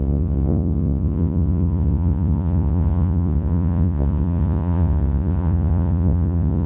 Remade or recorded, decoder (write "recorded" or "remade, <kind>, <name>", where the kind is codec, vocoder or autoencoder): remade, vocoder, Vocos